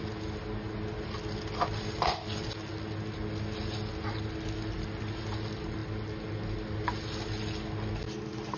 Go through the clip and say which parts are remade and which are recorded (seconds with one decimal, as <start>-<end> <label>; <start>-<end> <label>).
0.0-8.6 recorded